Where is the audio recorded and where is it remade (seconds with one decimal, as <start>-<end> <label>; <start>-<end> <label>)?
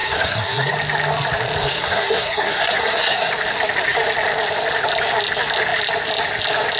0.0-0.7 remade; 0.7-1.6 recorded; 1.6-3.3 remade; 3.3-6.8 recorded